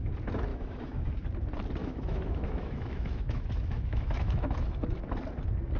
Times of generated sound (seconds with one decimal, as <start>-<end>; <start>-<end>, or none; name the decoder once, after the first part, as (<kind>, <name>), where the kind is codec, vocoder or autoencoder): 0.5-1.1 (autoencoder, DAC-VAE); 1.8-4.8